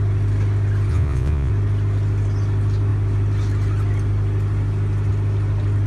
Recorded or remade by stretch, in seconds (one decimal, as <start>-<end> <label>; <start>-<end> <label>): 0.0-0.9 recorded; 0.9-1.5 remade; 1.5-5.9 recorded